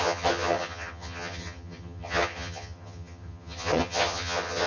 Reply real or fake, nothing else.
fake